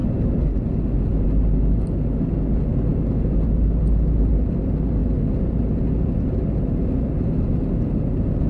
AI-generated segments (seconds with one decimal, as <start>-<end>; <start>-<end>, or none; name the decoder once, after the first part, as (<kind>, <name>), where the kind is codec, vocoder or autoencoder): none